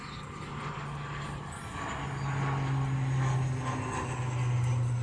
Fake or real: real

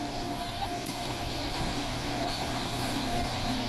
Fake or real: fake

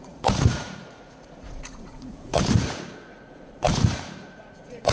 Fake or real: fake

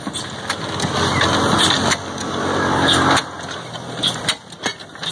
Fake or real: real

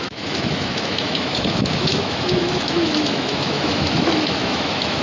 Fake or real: fake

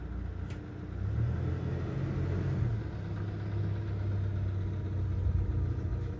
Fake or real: real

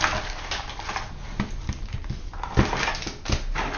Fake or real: real